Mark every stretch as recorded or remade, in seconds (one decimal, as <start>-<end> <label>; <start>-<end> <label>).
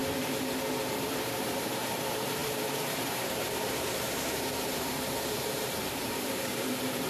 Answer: 0.0-0.9 recorded; 0.9-7.1 remade